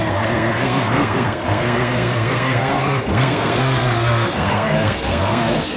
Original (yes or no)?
no